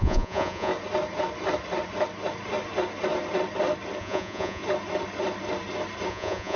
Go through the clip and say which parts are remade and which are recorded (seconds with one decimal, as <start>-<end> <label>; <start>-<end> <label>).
0.0-0.7 remade; 0.7-4.0 recorded; 4.0-4.6 remade; 4.6-6.1 recorded; 6.1-6.6 remade